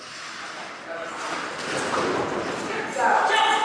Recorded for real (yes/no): yes